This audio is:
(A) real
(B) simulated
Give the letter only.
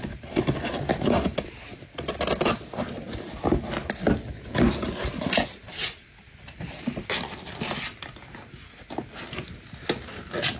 A